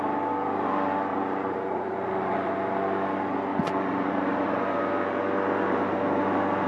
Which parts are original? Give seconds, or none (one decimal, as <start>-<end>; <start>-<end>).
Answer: 0.0-1.1; 2.5-3.5; 4.6-6.7